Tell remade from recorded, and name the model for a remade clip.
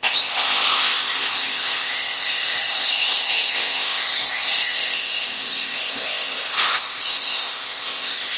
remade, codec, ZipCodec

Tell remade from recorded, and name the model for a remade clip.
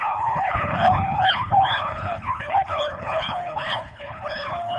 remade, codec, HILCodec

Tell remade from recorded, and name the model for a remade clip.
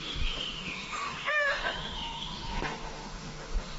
remade, autoencoder, DAC-VAE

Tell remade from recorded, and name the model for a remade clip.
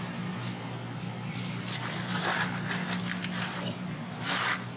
recorded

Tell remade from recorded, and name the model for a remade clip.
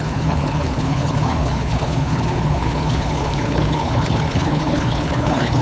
remade, codec, HILCodec